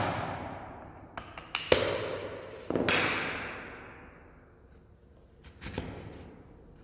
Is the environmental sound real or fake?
real